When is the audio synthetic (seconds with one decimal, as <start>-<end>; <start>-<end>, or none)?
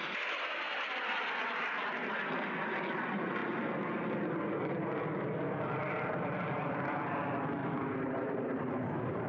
7.6-9.3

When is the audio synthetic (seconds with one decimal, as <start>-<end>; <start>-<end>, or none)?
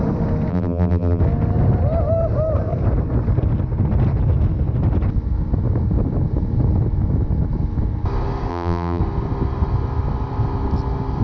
0.5-1.2; 8.5-9.0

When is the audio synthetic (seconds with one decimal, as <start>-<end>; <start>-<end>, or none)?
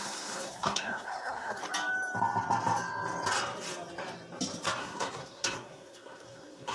0.0-1.6; 4.8-6.7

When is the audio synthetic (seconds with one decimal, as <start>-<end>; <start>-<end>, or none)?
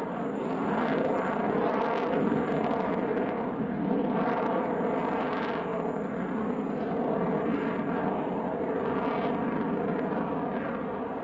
none